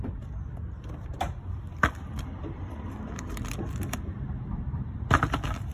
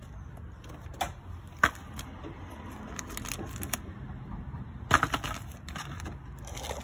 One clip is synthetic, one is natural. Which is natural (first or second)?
second